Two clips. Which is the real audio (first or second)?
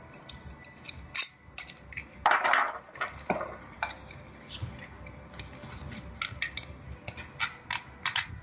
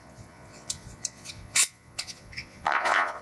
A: first